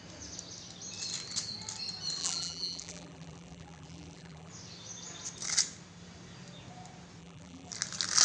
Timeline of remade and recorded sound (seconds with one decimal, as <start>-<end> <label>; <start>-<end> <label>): 0.0-2.2 recorded; 2.2-4.5 remade; 4.5-7.2 recorded; 7.2-7.7 remade; 7.7-8.2 recorded